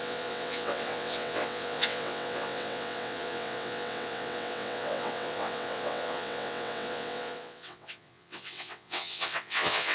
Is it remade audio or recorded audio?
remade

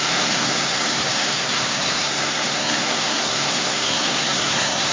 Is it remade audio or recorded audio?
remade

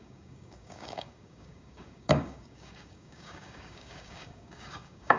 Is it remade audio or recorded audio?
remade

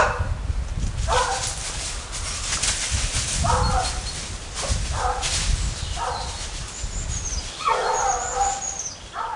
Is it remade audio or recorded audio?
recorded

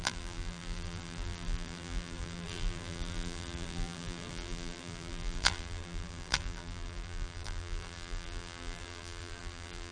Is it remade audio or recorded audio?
remade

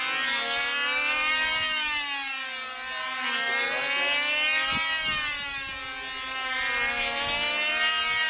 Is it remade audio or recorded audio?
recorded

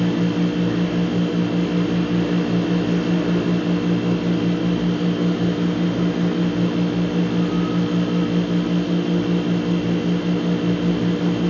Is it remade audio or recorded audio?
recorded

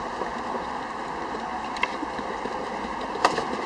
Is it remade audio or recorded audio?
recorded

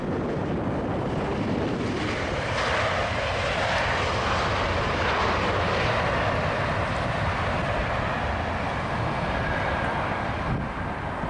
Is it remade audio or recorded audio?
recorded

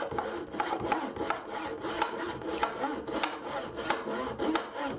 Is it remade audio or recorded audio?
recorded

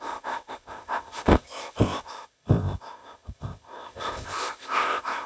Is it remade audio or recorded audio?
remade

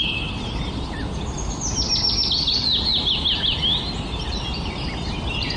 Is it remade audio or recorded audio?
recorded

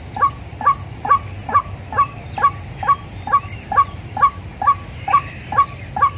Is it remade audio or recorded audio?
recorded